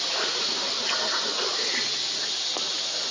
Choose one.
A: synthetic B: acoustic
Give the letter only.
B